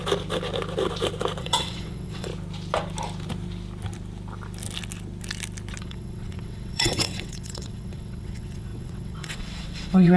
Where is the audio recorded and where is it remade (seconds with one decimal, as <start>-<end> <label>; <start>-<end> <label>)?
0.0-1.4 recorded; 1.4-2.3 remade; 2.3-5.8 recorded; 5.8-10.2 remade